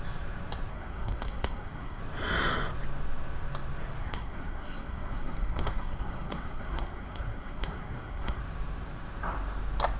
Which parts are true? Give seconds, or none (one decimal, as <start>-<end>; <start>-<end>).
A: 0.0-0.7; 2.0-4.0; 8.4-10.0